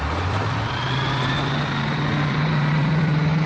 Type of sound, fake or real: fake